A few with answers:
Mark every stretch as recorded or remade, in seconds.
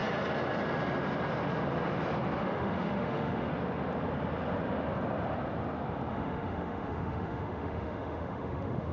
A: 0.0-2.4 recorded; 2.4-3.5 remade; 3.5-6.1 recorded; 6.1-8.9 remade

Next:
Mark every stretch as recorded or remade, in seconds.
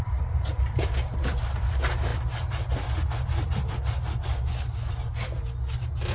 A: 0.0-6.1 recorded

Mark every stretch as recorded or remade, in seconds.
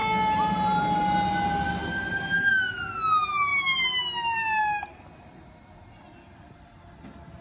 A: 0.0-7.4 recorded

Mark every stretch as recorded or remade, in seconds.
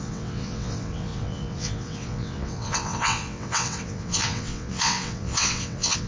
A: 0.0-6.1 remade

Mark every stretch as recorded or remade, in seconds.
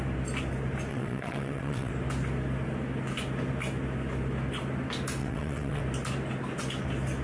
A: 0.0-0.9 recorded; 0.9-1.9 remade; 1.9-5.2 recorded; 5.2-5.8 remade; 5.8-7.2 recorded